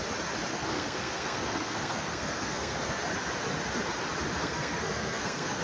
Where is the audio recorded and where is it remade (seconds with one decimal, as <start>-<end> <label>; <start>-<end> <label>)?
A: 0.0-0.5 recorded; 0.5-3.0 remade; 3.0-4.3 recorded; 4.3-5.6 remade